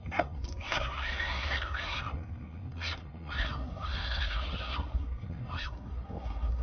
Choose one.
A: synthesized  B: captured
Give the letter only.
A